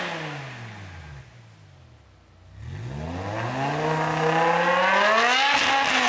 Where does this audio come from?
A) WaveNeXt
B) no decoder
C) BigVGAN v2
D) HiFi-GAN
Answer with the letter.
B